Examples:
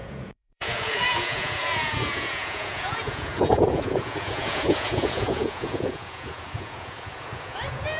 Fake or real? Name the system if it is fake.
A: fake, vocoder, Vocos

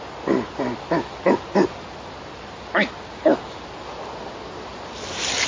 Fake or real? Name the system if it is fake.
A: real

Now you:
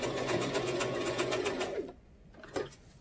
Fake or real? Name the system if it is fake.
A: fake, vocoder, Vocos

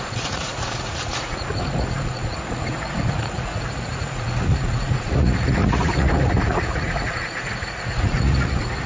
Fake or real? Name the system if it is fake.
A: fake, vocoder, Vocos